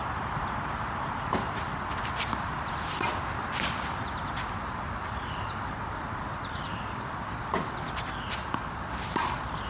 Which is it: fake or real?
fake